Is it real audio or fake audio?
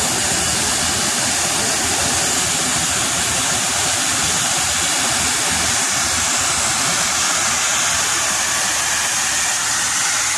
fake